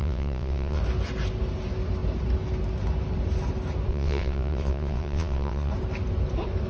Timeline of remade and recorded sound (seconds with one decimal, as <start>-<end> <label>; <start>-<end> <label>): 0.0-0.8 remade; 0.8-3.9 recorded; 3.9-5.7 remade; 5.7-6.7 recorded